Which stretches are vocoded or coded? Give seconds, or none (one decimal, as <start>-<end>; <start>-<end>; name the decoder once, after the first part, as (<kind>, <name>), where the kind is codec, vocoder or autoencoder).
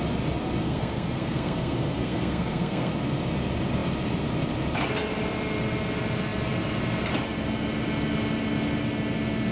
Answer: 0.6-2.9 (codec, SNAC)